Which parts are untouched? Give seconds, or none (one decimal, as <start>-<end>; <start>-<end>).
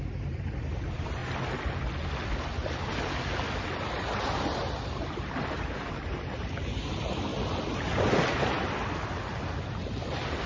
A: 1.2-4.4; 7.3-9.7